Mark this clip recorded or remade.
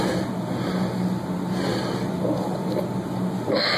recorded